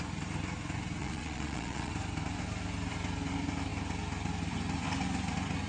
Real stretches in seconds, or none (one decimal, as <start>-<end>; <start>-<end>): 0.0-1.0; 1.9-5.7